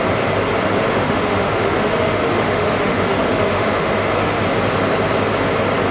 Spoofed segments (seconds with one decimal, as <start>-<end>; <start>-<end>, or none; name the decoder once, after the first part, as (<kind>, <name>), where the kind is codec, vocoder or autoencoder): 0.9-4.4 (autoencoder, DAC-VAE)